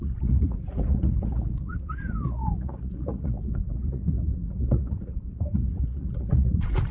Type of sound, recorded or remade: remade